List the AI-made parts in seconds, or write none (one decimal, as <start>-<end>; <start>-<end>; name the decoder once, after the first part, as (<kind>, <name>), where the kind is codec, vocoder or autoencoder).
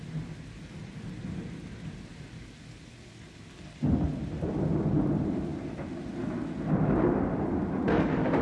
0.0-2.1 (vocoder, BigVGAN v2); 4.5-5.5; 7.4-8.4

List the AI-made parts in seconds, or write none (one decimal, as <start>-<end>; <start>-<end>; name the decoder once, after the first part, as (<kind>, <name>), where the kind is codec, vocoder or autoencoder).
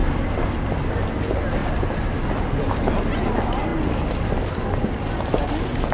0.0-0.9 (vocoder, BigVGAN v2); 1.6-2.3; 3.7-4.9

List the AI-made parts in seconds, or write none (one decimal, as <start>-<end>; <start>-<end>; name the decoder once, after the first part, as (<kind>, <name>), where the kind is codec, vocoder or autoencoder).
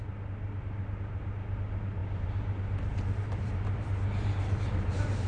2.0-5.3 (vocoder, BigVGAN v2)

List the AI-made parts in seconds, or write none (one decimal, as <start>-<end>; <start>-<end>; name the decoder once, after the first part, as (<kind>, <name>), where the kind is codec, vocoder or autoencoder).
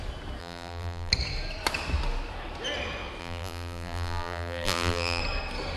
0.4-1.1 (vocoder, BigVGAN v2); 3.2-5.2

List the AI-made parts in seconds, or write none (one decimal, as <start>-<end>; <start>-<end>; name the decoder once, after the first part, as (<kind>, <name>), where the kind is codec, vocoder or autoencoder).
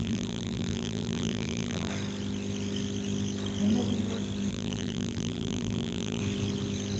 0.0-1.9 (vocoder, BigVGAN v2); 4.5-6.2